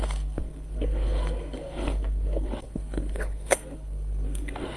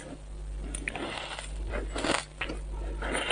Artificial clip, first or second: first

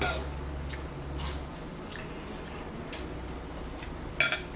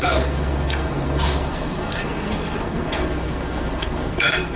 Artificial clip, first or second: second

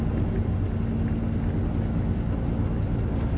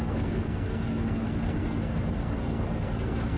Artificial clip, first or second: second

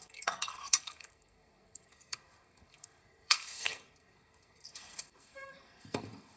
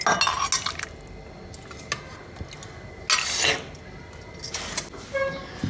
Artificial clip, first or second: first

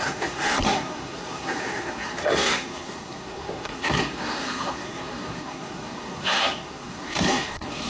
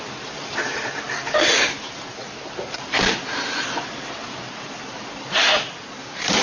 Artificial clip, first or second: first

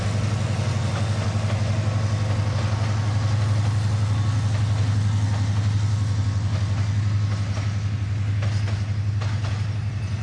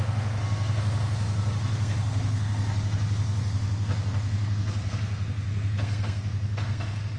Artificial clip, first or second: second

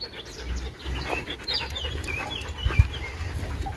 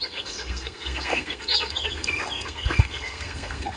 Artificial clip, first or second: second